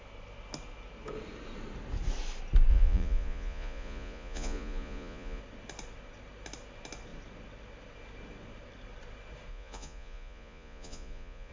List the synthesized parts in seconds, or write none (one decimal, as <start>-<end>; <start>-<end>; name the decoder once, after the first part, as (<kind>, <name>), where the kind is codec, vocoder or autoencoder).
2.7-5.4 (vocoder, Vocos); 9.5-11.5